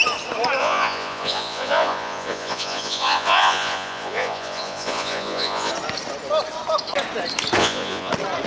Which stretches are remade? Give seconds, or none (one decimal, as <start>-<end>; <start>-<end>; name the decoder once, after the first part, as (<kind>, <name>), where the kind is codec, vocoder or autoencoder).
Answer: 0.6-5.7 (vocoder, Vocos); 7.6-8.1